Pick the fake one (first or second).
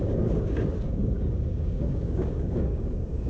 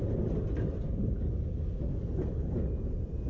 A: first